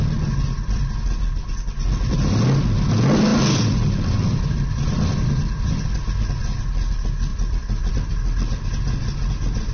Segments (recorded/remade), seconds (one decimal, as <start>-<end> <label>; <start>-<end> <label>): 0.0-3.3 recorded; 3.3-5.9 remade; 5.9-7.3 recorded; 7.3-7.9 remade; 7.9-9.7 recorded